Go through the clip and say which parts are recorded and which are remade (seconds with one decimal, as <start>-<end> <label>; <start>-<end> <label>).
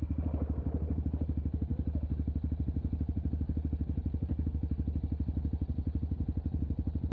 0.0-7.1 recorded